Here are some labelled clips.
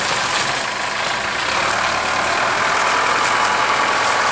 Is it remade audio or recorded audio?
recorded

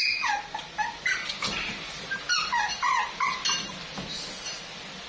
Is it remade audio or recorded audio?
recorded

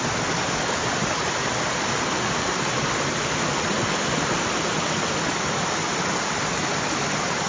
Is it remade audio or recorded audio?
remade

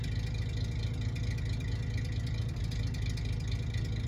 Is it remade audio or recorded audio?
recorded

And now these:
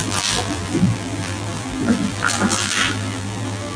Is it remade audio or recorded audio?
remade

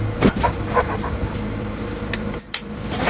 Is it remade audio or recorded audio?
remade